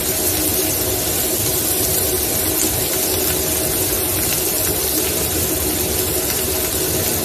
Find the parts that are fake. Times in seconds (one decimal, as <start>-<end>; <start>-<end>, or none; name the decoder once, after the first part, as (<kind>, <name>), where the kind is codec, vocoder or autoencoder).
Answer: none